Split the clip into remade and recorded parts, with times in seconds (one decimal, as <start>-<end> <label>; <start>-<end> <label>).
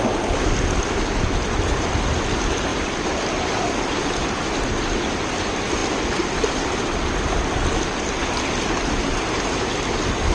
0.0-10.3 recorded